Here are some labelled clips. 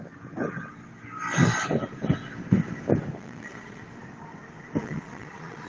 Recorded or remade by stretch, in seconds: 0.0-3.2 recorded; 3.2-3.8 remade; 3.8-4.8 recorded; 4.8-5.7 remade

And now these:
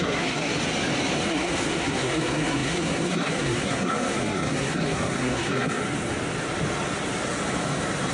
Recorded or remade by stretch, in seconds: 0.0-0.5 remade; 0.5-1.3 recorded; 1.3-5.8 remade; 5.8-8.1 recorded

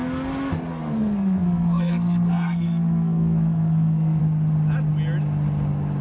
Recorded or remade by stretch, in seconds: 0.0-0.7 recorded; 0.7-4.2 remade; 4.2-6.0 recorded

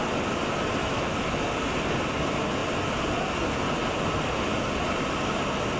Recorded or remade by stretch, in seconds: 0.0-0.8 recorded; 0.8-1.3 remade; 1.3-5.8 recorded

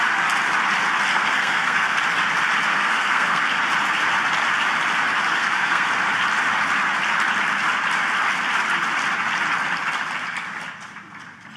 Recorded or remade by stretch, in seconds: 0.0-1.1 recorded; 1.1-2.0 remade; 2.0-2.7 recorded; 2.7-3.4 remade; 3.4-5.4 recorded; 5.4-5.9 remade; 5.9-11.6 recorded

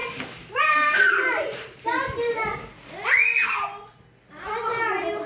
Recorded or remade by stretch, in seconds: 0.0-5.3 recorded

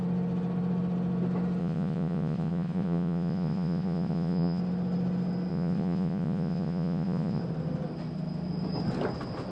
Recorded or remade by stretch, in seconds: 0.0-1.6 recorded; 1.6-4.6 remade; 4.6-5.5 recorded; 5.5-7.4 remade; 7.4-9.5 recorded

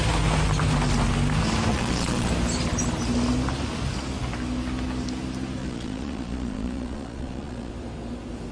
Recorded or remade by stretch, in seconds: 0.0-1.7 recorded; 1.7-2.3 remade; 2.3-5.6 recorded; 5.6-7.7 remade; 7.7-8.5 recorded